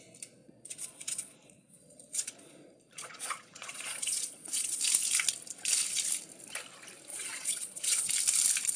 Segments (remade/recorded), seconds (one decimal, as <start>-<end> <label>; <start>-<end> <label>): 0.0-0.4 recorded; 0.4-4.8 remade; 4.8-7.1 recorded; 7.1-8.1 remade; 8.1-8.8 recorded